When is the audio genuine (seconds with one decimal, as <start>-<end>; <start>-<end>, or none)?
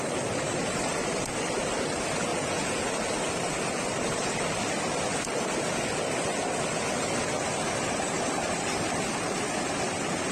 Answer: 0.0-2.3; 2.9-10.3